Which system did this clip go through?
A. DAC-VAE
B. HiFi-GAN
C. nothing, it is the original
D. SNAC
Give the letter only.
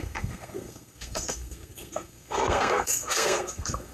D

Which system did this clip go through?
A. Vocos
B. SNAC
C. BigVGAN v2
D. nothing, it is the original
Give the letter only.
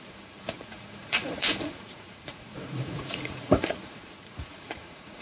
A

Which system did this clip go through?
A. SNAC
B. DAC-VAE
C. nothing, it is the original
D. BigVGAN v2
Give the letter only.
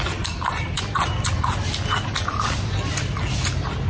C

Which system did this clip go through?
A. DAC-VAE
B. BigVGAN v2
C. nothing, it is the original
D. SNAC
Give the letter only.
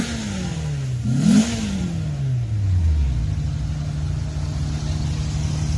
C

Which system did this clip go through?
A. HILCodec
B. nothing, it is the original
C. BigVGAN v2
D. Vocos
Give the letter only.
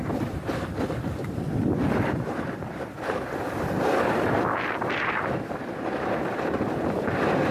C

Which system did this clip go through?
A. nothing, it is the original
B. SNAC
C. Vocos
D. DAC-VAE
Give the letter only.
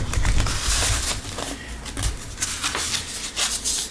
A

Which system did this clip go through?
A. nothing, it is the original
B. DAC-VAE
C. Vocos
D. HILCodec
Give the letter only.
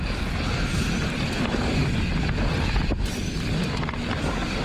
A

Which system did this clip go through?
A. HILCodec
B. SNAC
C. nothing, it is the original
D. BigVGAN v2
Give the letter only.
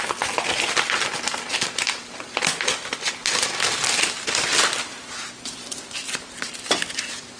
C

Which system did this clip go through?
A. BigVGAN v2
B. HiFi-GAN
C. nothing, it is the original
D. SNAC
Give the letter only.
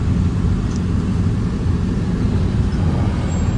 C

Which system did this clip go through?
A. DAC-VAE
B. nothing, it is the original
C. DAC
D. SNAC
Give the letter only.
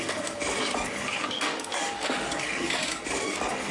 C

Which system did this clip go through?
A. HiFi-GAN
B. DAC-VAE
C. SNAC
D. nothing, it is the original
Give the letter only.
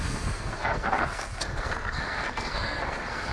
C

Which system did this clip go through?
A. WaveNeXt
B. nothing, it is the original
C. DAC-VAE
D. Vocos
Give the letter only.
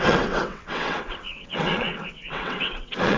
A